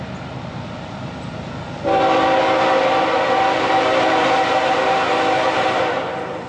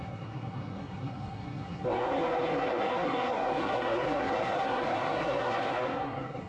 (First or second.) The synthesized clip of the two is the second